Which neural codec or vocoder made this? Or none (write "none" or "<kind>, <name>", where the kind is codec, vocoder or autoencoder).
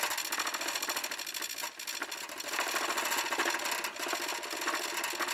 none